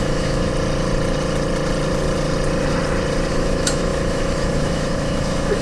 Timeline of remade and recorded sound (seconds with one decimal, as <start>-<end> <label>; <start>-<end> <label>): 0.0-0.5 remade; 0.5-3.3 recorded; 3.3-5.6 remade

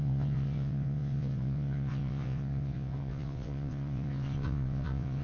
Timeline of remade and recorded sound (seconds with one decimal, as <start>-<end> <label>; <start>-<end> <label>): 0.0-5.2 remade

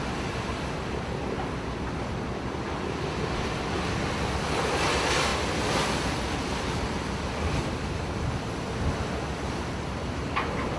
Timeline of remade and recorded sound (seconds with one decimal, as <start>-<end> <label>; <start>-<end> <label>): 0.0-10.8 recorded

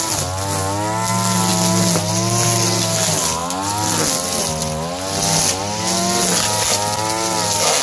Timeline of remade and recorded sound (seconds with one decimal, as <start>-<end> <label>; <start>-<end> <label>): 0.0-7.8 recorded

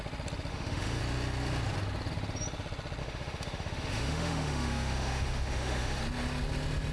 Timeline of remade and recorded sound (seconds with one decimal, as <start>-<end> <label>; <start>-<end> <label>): 0.0-0.5 recorded; 0.5-1.0 remade; 1.0-3.0 recorded; 3.0-6.0 remade; 6.0-6.9 recorded

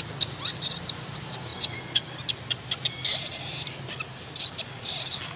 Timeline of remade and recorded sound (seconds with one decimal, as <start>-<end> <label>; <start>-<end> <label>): 0.0-5.4 recorded

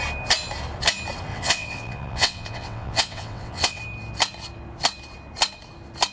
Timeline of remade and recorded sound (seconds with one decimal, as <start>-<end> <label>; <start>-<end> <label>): 0.0-1.3 recorded; 1.3-3.8 remade; 3.8-6.1 recorded

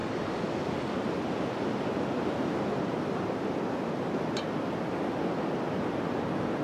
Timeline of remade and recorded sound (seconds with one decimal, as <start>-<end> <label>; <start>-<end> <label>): 0.0-0.9 remade; 0.9-6.6 recorded